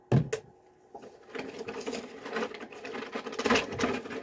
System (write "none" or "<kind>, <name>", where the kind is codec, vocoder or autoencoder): none